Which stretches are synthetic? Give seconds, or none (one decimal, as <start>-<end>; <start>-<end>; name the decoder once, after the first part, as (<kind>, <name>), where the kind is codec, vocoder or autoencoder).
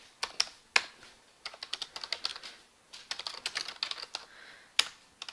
none